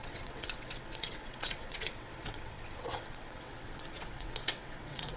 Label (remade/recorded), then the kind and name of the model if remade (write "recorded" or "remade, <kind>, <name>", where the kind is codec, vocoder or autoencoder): remade, vocoder, WaveNeXt